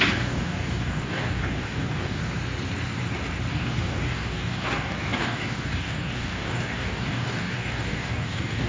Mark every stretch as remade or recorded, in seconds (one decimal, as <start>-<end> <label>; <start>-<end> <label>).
0.0-2.2 remade; 2.2-3.5 recorded; 3.5-8.7 remade